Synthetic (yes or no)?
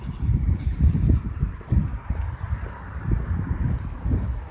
no